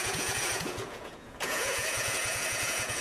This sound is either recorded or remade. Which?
remade